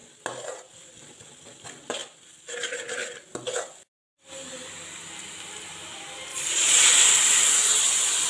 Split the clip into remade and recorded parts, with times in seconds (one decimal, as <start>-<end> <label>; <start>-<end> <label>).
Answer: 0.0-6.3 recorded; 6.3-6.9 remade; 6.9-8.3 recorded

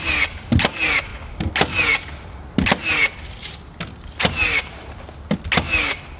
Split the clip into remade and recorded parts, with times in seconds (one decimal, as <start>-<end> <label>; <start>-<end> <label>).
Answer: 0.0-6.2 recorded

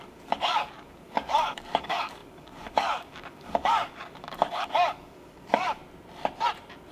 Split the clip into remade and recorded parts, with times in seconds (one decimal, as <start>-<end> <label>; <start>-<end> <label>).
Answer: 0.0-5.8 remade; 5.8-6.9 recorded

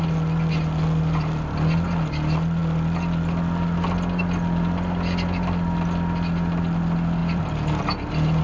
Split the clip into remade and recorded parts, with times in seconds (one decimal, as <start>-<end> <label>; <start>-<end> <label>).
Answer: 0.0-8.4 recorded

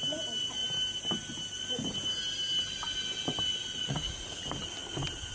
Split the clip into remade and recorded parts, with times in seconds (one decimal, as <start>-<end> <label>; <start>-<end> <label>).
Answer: 0.0-3.8 recorded; 3.8-4.4 remade; 4.4-5.3 recorded